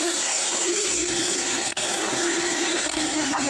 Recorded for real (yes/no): no